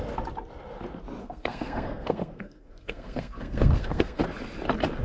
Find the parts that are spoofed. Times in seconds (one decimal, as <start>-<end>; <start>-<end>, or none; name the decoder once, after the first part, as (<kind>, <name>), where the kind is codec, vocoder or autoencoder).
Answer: 1.2-4.2 (codec, SNAC)